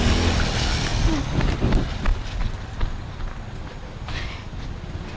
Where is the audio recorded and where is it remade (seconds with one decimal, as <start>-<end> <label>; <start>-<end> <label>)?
0.0-5.2 recorded